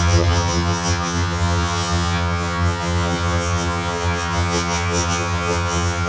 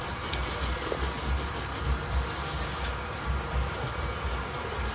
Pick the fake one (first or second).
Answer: first